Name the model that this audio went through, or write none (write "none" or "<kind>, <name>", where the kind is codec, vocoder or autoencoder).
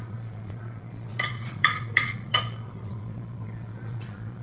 vocoder, Vocos